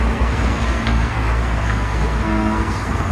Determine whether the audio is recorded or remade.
remade